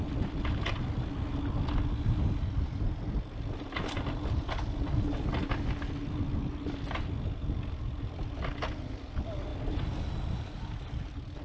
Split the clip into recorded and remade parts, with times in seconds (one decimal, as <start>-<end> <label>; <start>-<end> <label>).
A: 0.0-11.4 recorded